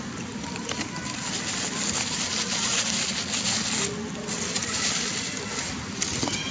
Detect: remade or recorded recorded